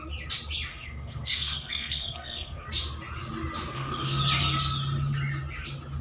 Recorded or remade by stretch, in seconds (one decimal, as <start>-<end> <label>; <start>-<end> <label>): 0.0-0.7 recorded; 0.7-2.7 remade; 2.7-3.7 recorded; 3.7-4.2 remade; 4.2-6.0 recorded